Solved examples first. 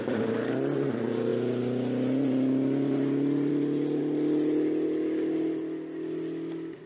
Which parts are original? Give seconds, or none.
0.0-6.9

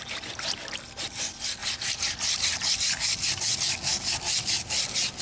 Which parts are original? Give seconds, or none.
1.6-2.7

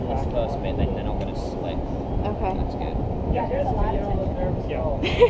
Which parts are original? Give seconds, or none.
0.0-5.3

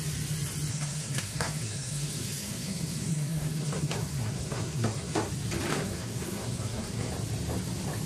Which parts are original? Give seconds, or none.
0.0-0.7; 5.3-5.7; 7.1-8.1

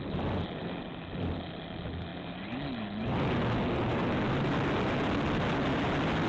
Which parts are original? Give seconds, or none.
0.0-6.3